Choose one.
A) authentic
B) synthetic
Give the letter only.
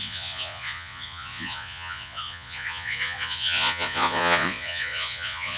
B